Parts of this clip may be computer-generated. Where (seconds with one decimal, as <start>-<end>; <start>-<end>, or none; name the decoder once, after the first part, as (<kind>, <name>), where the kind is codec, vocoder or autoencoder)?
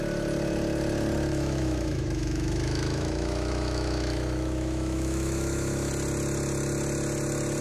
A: 1.3-5.9 (autoencoder, DAC-VAE)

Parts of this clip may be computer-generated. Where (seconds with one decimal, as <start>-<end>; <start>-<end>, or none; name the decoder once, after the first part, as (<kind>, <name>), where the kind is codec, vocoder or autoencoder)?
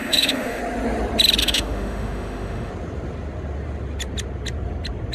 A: 0.0-0.6 (autoencoder, DAC-VAE); 1.4-2.7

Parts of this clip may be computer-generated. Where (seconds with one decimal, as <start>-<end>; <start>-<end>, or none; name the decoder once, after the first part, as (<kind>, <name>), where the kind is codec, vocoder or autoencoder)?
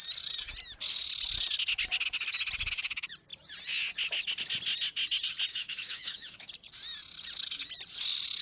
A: 5.5-6.5 (autoencoder, DAC-VAE)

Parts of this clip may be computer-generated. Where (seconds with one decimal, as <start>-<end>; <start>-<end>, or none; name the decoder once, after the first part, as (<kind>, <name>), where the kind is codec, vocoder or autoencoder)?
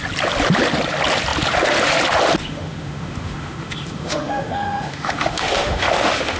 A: 2.4-6.4 (autoencoder, DAC-VAE)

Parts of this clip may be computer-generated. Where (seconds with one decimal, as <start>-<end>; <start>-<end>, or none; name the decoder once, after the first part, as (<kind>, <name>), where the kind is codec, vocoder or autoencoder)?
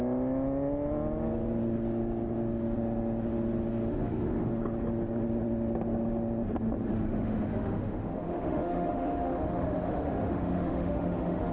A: 3.9-4.5 (autoencoder, DAC-VAE); 6.9-11.5